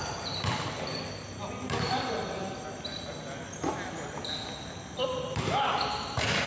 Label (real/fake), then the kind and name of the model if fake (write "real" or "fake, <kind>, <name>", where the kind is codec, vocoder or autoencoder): real